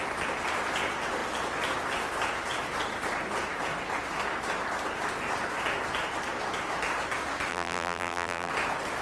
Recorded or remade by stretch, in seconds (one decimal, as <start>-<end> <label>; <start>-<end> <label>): 0.0-7.5 recorded; 7.5-8.5 remade; 8.5-9.0 recorded